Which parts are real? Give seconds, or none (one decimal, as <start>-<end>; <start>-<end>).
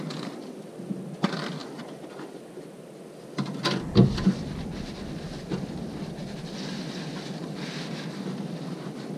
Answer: 0.0-9.2